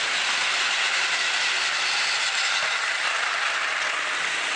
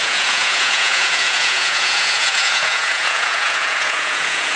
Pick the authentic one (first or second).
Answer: first